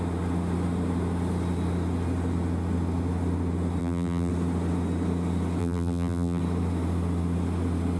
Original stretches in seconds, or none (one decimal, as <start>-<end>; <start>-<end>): 0.0-3.8; 4.3-5.6; 6.4-8.0